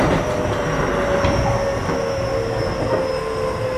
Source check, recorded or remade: recorded